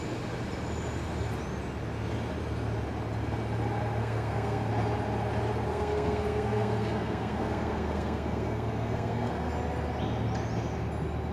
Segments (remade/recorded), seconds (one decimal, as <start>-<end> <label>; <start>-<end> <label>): 0.0-4.0 recorded; 4.0-4.7 remade; 4.7-5.7 recorded; 5.7-9.5 remade; 9.5-11.3 recorded